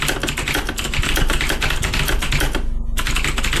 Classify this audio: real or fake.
real